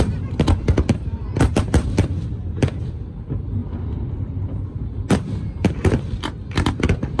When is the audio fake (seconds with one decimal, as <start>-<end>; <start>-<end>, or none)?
0.0-7.2